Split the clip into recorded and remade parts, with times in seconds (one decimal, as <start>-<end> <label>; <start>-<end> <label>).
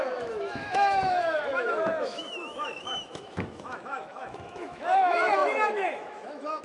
0.0-6.6 remade